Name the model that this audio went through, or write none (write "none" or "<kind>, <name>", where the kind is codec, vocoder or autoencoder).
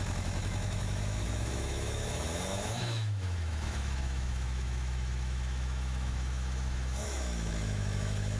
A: autoencoder, DAC-VAE